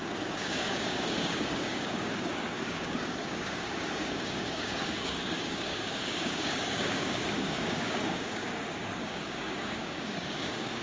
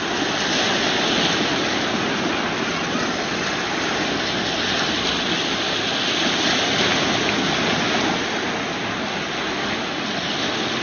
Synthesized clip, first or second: first